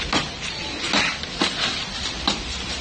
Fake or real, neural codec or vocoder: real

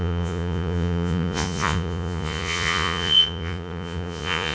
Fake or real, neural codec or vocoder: fake, vocoder, Vocos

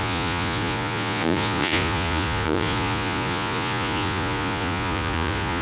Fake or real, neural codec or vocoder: fake, vocoder, Vocos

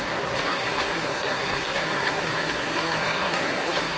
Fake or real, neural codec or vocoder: fake, codec, SNAC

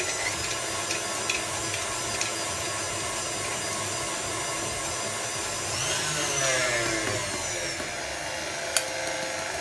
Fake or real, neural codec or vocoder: real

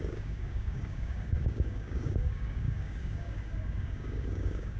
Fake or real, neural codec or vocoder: fake, codec, DAC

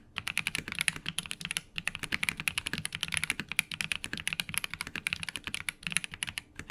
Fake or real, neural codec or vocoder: real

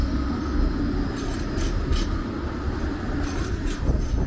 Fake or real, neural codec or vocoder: real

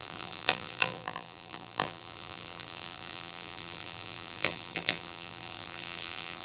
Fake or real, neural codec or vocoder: fake, vocoder, BigVGAN v2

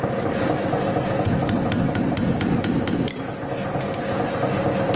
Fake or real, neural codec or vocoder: real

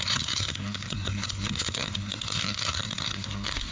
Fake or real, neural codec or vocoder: fake, codec, SNAC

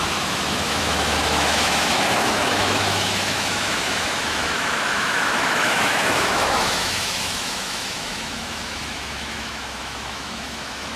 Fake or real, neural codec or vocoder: fake, autoencoder, DAC-VAE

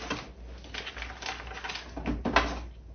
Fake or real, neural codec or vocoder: real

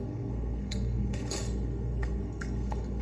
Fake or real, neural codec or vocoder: fake, codec, SNAC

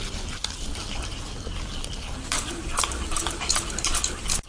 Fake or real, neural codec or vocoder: real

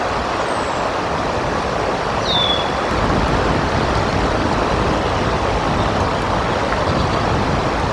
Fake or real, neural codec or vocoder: real